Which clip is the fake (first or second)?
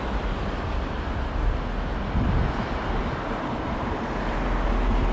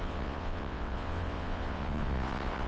second